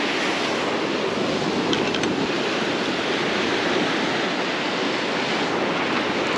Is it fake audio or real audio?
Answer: real